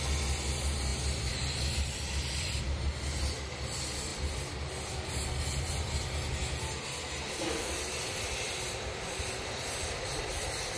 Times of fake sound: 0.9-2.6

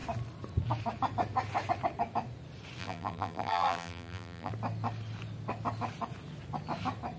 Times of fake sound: 2.8-4.5